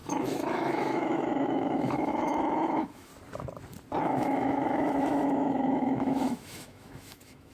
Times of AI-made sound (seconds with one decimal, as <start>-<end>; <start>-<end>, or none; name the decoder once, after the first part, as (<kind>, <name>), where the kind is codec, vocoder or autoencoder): 0.0-3.1 (autoencoder, DAC-VAE); 4.0-7.5

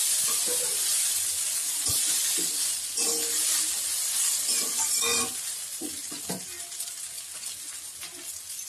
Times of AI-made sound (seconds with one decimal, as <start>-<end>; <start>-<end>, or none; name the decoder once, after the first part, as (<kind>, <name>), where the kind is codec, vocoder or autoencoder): none

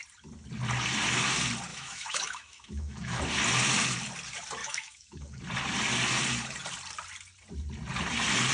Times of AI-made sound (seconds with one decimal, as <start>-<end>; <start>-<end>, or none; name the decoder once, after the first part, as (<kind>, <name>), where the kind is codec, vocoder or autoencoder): 1.7-3.2 (autoencoder, DAC-VAE); 4.6-5.4

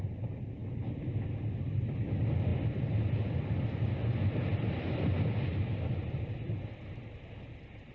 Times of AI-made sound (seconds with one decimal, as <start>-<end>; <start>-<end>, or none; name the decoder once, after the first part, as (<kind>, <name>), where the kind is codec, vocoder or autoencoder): none

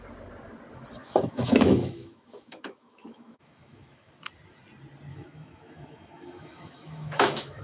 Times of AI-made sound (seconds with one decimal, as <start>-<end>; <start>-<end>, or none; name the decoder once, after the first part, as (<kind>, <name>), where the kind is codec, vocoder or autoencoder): 1.0-4.1 (autoencoder, DAC-VAE); 5.1-7.6

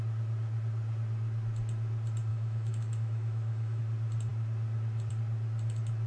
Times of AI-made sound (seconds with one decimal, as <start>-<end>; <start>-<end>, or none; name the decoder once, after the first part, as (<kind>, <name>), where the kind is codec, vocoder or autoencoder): 2.3-3.8 (autoencoder, DAC-VAE)

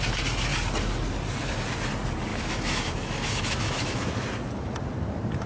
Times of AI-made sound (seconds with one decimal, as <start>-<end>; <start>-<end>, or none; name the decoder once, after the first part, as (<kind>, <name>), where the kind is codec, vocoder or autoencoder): 2.3-4.1 (autoencoder, DAC-VAE)